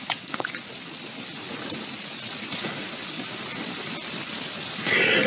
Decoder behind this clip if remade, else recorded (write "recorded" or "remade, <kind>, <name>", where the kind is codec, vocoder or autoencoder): recorded